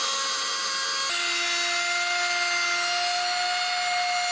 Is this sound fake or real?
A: real